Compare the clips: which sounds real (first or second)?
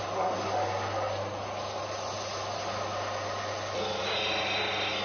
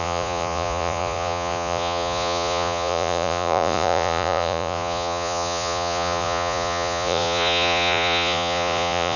first